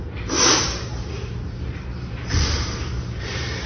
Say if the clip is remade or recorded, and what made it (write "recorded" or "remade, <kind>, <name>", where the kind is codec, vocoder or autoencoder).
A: remade, vocoder, BigVGAN v2